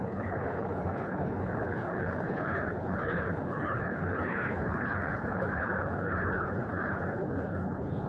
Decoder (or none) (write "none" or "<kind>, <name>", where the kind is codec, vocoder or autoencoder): codec, HILCodec